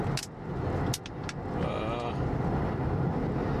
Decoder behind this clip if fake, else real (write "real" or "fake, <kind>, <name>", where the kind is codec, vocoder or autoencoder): real